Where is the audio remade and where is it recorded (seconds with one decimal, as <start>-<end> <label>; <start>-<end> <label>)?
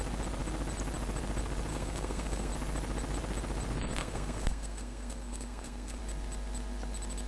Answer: 0.0-1.7 recorded; 1.7-2.5 remade; 2.5-4.0 recorded; 4.0-6.0 remade; 6.0-7.3 recorded